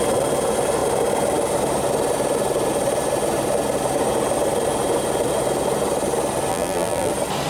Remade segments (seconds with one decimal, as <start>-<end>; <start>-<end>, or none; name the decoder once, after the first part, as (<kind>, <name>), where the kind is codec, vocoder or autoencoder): 6.5-7.1 (vocoder, BigVGAN v2)